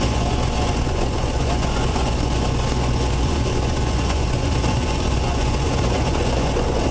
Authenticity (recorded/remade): remade